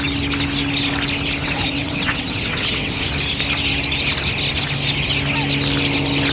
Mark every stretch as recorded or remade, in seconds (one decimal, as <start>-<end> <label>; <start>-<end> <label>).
0.0-1.4 recorded; 1.4-3.1 remade; 3.1-6.3 recorded